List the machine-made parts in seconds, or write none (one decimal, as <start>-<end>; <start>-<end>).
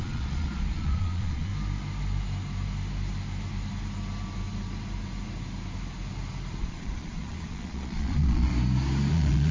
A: 0.0-1.5; 6.6-8.5; 9.1-9.5